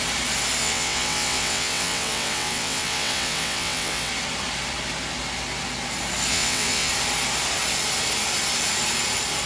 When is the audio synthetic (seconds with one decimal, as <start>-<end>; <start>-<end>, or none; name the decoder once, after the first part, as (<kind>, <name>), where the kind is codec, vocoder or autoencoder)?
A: 0.6-4.1 (vocoder, WaveNeXt); 6.3-6.9